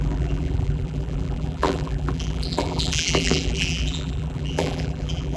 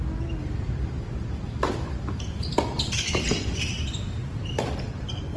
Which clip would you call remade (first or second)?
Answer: first